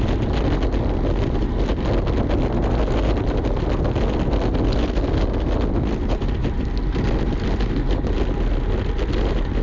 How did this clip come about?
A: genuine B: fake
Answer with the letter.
A